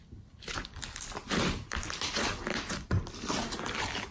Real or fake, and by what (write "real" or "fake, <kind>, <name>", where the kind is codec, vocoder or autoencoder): real